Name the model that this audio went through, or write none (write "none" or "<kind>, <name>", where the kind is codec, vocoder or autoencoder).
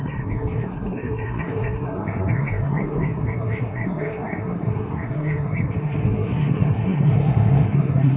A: codec, SNAC